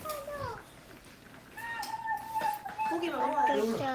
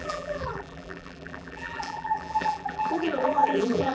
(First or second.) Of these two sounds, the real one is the first